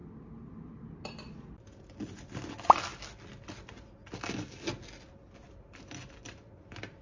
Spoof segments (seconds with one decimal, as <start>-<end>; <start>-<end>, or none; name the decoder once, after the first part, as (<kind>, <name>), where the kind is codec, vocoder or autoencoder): none